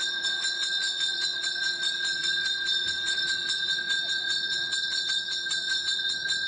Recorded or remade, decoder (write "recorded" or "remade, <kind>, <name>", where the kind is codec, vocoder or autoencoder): remade, vocoder, Vocos